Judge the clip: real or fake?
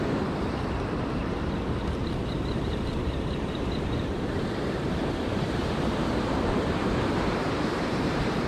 fake